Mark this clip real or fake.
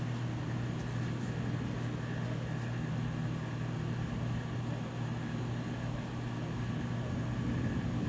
real